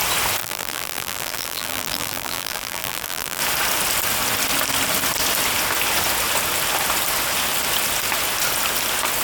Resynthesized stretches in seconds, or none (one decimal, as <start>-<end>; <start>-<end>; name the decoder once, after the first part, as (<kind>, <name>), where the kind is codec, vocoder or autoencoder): 0.4-3.4 (vocoder, BigVGAN v2)